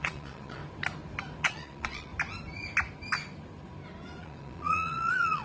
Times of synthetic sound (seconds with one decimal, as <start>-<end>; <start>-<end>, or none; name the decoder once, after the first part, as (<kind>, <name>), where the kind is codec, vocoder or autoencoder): 0.0-0.6 (vocoder, Vocos); 1.4-2.1; 4.2-5.4